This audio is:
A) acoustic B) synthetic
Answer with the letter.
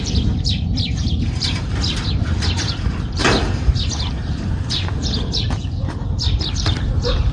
B